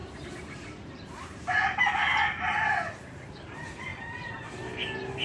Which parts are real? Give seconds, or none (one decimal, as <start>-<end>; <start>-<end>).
1.8-3.9; 4.5-5.2